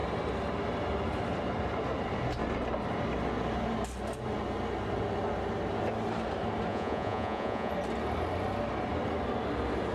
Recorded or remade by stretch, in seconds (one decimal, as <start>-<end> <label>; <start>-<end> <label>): 0.0-6.7 recorded; 6.7-7.7 remade; 7.7-9.9 recorded